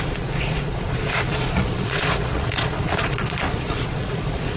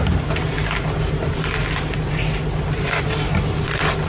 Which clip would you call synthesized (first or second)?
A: first